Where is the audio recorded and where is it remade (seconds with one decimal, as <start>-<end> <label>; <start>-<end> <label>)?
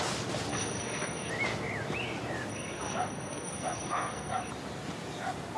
0.0-0.5 recorded; 0.5-1.3 remade; 1.3-2.5 recorded; 2.5-4.5 remade; 4.5-5.6 recorded